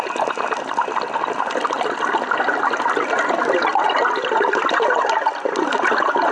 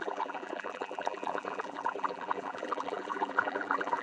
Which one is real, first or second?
first